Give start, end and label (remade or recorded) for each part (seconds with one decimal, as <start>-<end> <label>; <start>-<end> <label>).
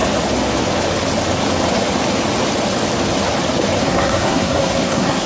0.0-3.8 recorded; 3.8-5.3 remade